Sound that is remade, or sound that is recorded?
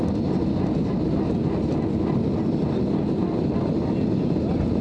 recorded